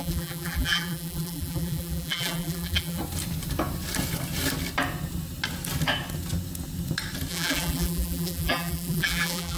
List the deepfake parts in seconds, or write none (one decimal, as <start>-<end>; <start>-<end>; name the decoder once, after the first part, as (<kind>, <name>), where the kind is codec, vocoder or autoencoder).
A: 0.0-3.0 (vocoder, BigVGAN v2); 7.3-9.6